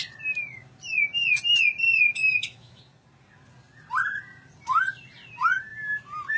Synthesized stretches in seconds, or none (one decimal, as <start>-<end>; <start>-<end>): 2.1-2.8